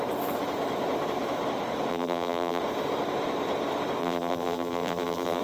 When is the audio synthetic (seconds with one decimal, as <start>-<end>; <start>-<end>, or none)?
1.9-2.6; 4.0-5.4